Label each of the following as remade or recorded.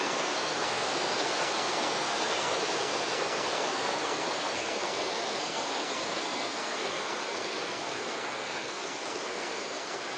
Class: remade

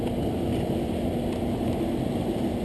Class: recorded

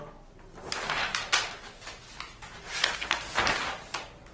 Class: recorded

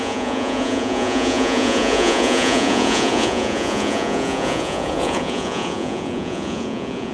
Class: remade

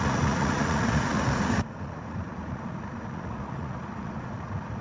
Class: remade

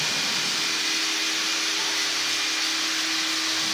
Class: recorded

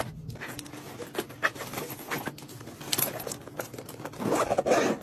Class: recorded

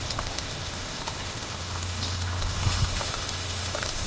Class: remade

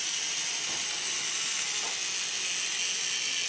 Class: recorded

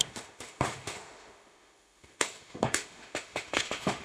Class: remade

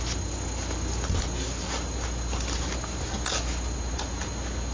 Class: recorded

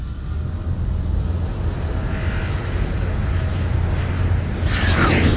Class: recorded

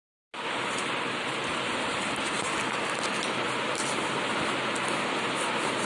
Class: recorded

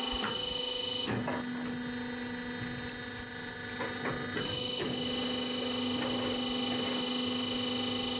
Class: recorded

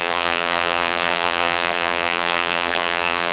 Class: remade